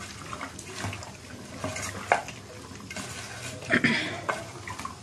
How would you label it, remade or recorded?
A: recorded